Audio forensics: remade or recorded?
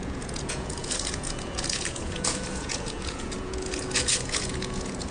remade